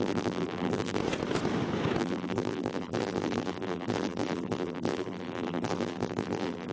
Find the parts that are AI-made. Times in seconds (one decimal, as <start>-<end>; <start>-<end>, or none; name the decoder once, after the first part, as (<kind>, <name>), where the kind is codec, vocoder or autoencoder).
0.0-1.0 (vocoder, BigVGAN v2); 2.0-6.7